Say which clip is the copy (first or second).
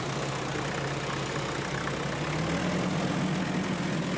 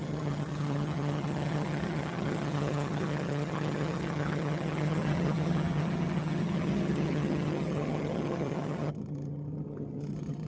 second